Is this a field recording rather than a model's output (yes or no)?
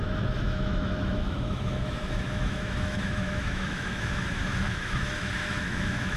no